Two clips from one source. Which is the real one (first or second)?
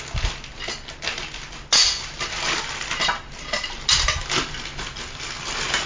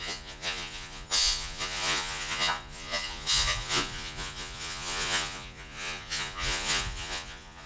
first